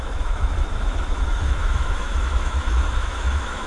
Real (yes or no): no